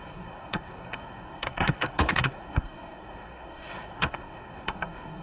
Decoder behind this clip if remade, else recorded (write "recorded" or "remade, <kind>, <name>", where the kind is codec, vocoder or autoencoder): remade, codec, SNAC